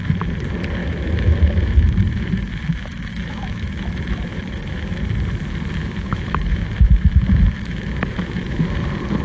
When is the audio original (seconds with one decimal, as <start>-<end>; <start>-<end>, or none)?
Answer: 0.0-0.8; 5.0-5.8; 8.6-9.2